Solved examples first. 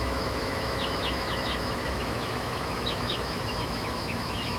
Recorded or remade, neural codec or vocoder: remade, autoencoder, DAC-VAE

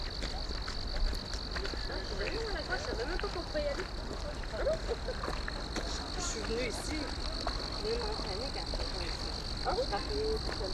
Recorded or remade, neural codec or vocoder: recorded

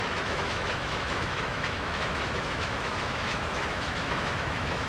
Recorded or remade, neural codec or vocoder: remade, autoencoder, DAC-VAE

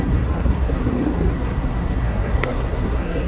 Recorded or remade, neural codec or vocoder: remade, codec, SNAC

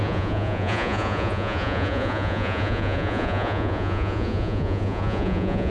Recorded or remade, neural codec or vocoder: remade, vocoder, Vocos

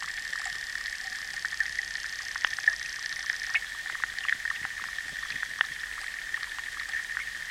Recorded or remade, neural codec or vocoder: recorded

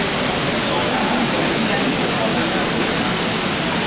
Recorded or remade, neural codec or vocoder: recorded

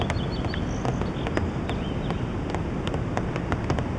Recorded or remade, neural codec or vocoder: recorded